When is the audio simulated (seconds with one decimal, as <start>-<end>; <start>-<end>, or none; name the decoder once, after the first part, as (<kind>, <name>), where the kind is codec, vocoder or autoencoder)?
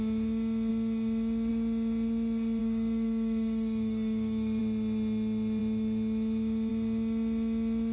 2.6-4.6 (codec, DAC)